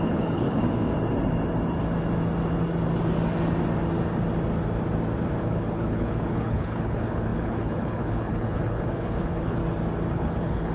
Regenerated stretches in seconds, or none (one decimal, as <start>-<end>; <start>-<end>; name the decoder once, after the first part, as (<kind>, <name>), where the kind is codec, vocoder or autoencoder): 0.0-0.6 (codec, HILCodec); 5.4-9.6; 10.1-10.7